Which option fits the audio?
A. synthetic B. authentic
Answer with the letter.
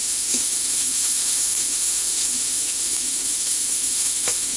A